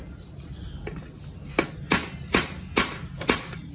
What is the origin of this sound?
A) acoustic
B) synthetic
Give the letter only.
A